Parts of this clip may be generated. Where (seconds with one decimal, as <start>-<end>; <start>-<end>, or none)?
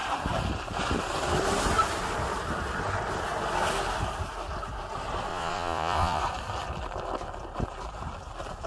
5.3-6.2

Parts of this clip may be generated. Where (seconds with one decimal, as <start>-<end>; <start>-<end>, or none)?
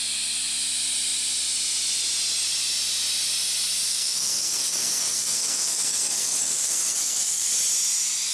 3.9-7.5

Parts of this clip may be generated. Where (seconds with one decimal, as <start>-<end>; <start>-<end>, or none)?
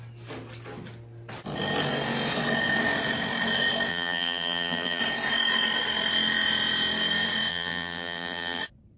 3.9-5.0; 7.5-8.6